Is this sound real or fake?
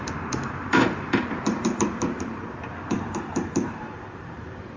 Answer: fake